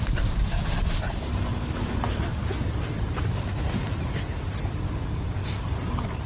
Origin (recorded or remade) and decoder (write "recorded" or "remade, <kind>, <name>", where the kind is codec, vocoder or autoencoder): recorded